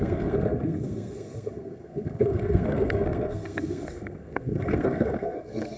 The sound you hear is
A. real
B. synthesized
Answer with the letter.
B